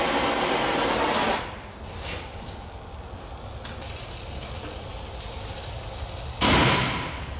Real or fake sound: real